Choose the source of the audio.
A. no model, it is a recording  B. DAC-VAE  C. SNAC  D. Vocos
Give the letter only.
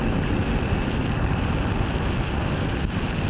A